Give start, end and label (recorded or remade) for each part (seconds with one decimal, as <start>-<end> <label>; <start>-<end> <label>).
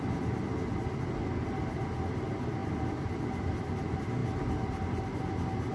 0.0-2.6 recorded; 2.6-3.6 remade; 3.6-5.7 recorded